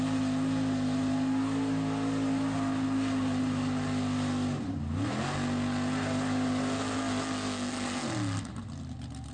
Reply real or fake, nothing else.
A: real